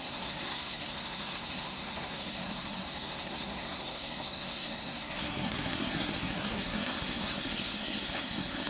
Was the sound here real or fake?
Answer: fake